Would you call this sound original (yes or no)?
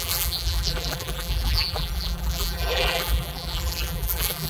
no